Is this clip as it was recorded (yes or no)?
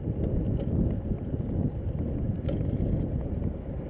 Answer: yes